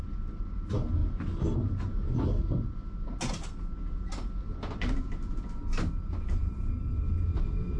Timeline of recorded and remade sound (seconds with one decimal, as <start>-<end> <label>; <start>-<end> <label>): 0.0-7.8 recorded